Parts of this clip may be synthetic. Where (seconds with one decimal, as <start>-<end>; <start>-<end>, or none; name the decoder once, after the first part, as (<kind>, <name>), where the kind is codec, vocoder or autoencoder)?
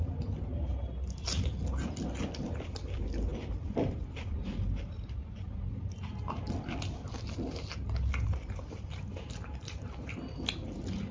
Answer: none